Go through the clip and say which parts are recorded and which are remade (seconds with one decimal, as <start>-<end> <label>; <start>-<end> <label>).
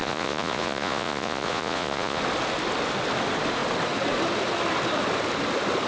0.0-2.2 remade; 2.2-5.9 recorded